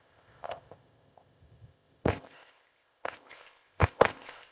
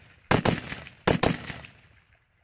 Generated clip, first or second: first